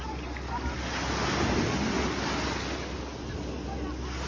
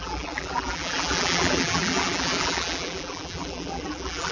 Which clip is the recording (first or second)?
first